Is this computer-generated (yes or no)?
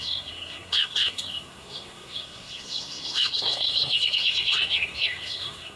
yes